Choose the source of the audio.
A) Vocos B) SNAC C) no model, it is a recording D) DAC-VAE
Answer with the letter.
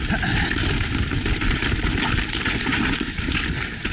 C